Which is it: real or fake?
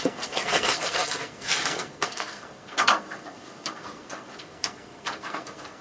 fake